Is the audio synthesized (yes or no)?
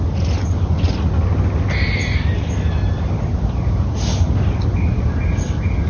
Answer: no